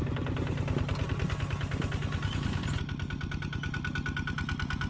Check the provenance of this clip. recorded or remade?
recorded